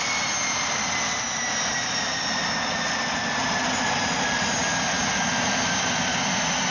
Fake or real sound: real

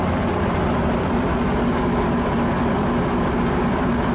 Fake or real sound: fake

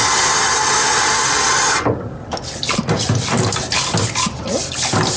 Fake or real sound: real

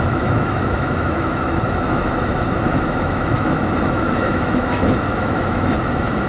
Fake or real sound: fake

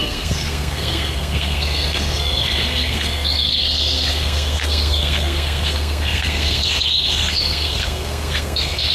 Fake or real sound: fake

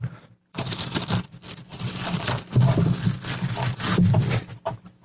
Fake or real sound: real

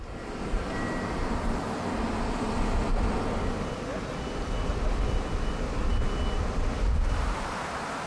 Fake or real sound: real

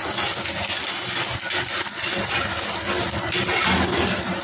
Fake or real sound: real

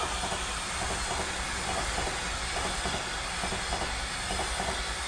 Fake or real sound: real